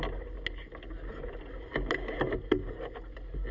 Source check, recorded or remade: recorded